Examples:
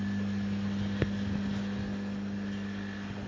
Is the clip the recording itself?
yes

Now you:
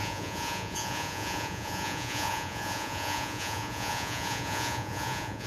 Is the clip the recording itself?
no